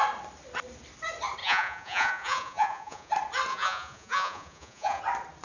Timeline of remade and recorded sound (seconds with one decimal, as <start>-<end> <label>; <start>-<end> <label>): 0.0-1.4 recorded; 1.4-3.1 remade; 3.1-3.5 recorded; 3.5-5.0 remade; 5.0-5.4 recorded